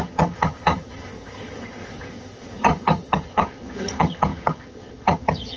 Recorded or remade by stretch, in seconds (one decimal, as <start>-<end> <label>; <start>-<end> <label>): 0.0-5.6 remade